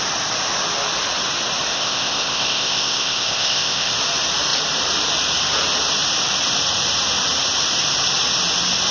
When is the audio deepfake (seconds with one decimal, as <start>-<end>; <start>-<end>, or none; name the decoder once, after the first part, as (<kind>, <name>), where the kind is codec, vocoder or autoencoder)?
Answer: 1.7-3.9 (codec, ZipCodec)